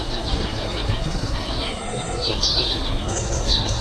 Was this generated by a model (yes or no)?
yes